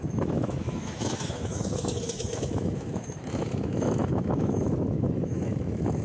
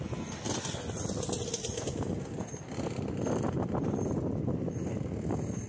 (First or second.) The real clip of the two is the second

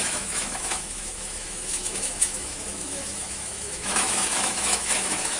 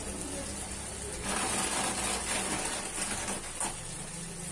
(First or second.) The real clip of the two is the second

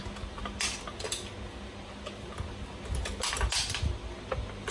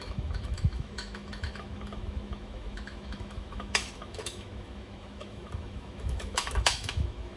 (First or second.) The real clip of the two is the first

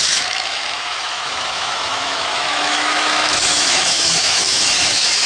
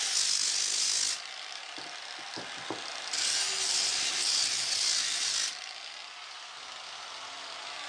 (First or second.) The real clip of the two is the second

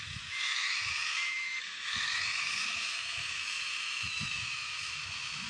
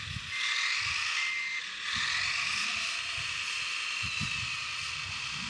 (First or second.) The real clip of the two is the second